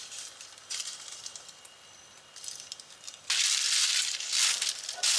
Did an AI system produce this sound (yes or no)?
no